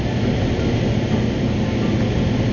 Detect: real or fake real